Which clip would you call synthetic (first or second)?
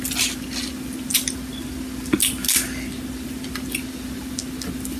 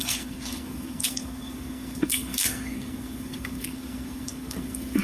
second